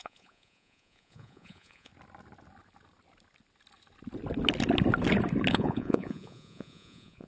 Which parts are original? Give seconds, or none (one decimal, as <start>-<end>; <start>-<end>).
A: 1.9-5.5